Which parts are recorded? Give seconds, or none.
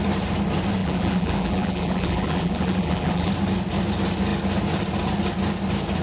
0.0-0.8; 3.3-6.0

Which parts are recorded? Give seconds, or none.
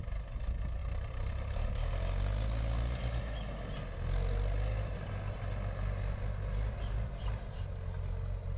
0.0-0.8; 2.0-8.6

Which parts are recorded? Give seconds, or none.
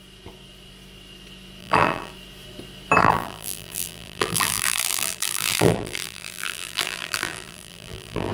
0.0-1.6; 2.1-3.0